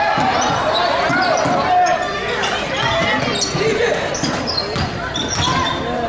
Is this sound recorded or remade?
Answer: recorded